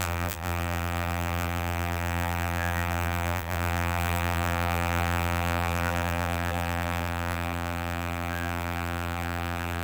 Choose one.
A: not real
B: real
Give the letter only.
A